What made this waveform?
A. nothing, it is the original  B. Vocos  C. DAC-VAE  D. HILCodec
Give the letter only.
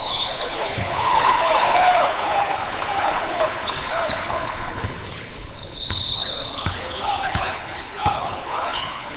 D